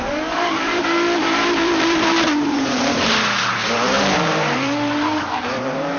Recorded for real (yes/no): no